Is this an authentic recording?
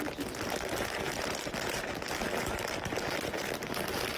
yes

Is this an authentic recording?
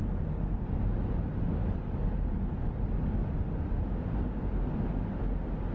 yes